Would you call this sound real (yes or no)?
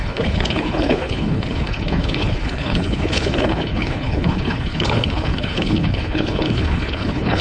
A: no